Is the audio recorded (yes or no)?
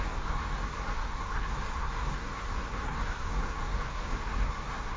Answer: no